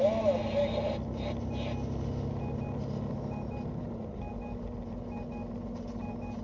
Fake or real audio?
real